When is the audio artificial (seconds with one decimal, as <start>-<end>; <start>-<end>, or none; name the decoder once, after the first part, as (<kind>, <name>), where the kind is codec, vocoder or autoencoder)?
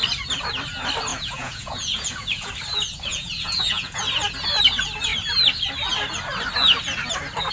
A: 1.1-2.5 (vocoder, Vocos); 3.1-4.0